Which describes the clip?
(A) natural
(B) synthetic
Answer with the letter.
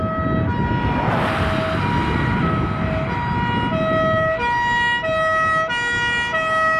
A